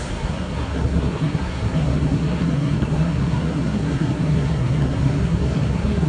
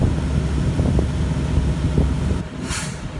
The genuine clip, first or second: second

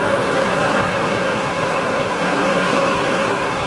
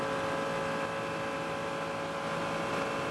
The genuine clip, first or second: second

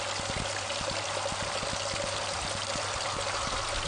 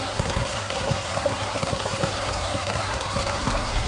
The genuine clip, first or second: first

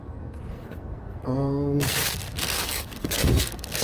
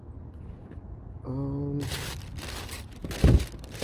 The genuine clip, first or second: second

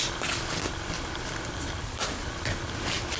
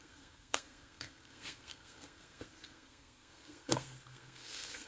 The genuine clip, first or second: first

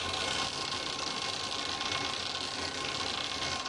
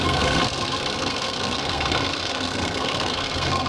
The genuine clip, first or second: first